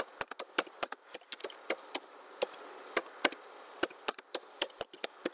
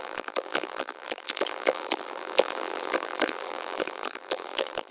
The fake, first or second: second